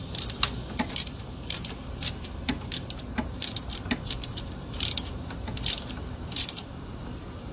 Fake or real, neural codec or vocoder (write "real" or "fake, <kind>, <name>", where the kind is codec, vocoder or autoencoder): fake, vocoder, BigVGAN v2